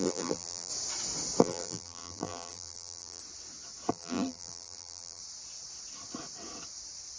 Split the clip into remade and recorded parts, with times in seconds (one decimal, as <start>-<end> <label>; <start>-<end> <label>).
0.0-0.7 remade; 0.7-1.4 recorded; 1.4-3.2 remade; 3.2-3.9 recorded; 3.9-5.2 remade; 5.2-7.2 recorded